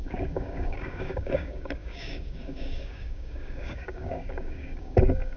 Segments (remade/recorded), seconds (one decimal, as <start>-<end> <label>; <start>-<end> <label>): 0.0-5.4 remade